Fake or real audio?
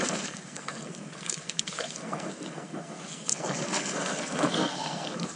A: fake